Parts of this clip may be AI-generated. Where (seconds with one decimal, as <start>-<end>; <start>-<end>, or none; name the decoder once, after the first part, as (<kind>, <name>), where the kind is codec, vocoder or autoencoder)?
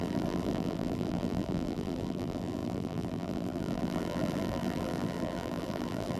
0.0-6.2 (vocoder, BigVGAN v2)